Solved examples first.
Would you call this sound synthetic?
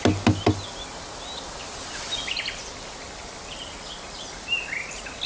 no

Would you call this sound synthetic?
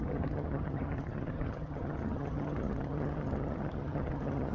yes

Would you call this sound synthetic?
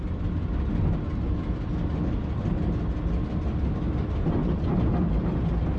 no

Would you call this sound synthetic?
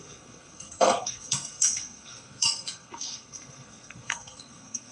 yes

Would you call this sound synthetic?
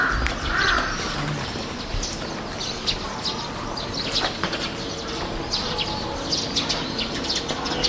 no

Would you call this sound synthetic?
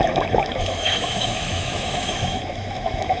yes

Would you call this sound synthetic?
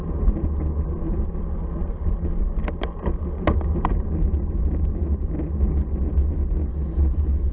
no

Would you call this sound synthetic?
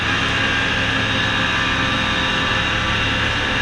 no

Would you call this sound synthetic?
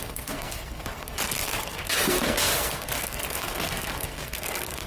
yes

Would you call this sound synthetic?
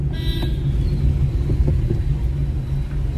no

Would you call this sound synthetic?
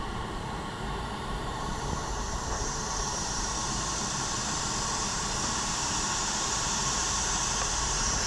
yes